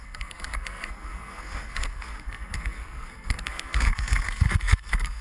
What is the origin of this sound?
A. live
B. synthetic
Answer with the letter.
B